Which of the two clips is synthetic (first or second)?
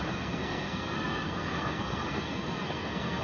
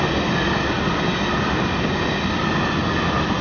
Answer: first